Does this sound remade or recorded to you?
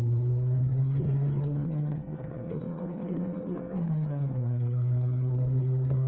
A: remade